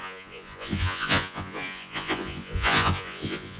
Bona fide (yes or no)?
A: no